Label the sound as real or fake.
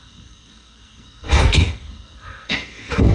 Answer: fake